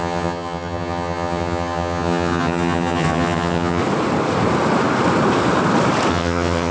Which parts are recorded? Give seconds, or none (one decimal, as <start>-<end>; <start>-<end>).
3.8-6.1